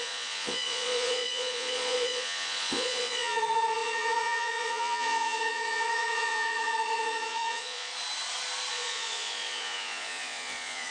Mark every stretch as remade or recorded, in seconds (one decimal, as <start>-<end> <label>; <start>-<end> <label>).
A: 0.0-7.9 remade; 7.9-8.7 recorded; 8.7-10.9 remade